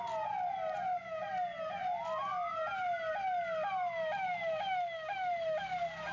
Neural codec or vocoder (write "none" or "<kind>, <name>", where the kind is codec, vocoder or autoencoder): none